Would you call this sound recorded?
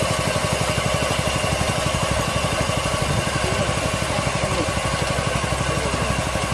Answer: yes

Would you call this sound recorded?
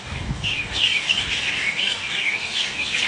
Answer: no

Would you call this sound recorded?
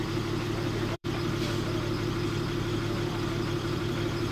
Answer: no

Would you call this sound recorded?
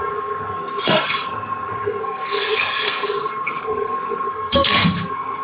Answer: no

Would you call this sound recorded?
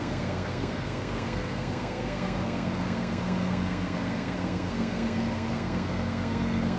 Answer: no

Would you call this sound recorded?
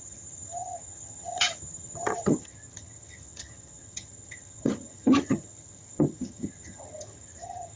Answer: no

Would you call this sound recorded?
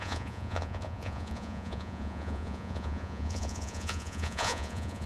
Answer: no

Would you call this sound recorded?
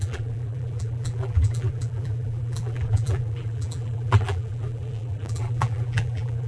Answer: no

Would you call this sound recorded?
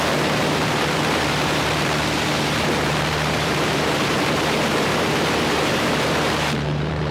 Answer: no